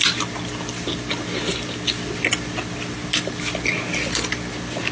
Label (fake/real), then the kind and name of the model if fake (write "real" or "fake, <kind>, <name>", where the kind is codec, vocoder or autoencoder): real